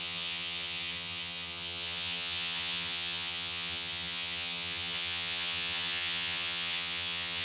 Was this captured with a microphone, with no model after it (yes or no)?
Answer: no